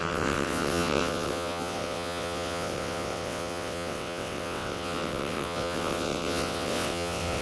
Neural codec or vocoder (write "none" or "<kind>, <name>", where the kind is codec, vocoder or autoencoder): vocoder, WaveNeXt